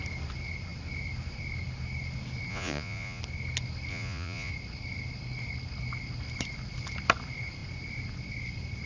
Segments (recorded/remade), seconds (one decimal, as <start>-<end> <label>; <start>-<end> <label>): 0.0-2.5 recorded; 2.5-3.2 remade; 3.2-3.9 recorded; 3.9-4.5 remade; 4.5-8.9 recorded